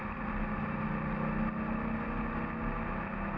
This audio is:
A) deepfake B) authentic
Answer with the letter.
B